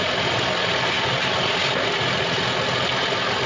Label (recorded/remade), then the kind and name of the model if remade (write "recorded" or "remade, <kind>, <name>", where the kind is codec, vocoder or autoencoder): recorded